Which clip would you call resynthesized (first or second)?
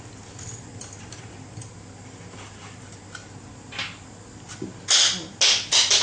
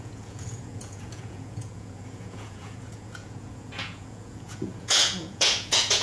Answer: second